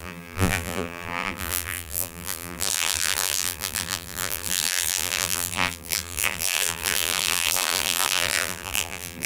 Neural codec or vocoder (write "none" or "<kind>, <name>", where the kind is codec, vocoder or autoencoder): vocoder, BigVGAN v2